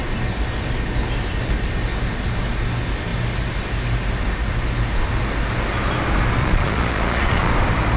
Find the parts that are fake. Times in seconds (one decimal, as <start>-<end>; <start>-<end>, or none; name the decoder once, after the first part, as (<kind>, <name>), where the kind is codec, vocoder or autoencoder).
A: 6.4-7.5 (vocoder, Vocos)